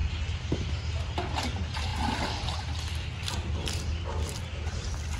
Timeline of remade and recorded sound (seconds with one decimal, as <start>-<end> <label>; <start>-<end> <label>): 0.0-3.2 recorded; 3.2-4.4 remade; 4.4-5.2 recorded